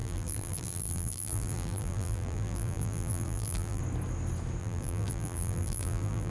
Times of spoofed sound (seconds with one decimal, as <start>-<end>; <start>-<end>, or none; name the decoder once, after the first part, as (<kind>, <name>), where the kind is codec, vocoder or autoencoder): 0.0-3.8 (vocoder, BigVGAN v2); 4.6-6.3